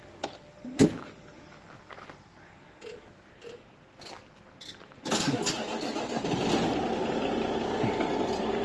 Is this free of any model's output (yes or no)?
yes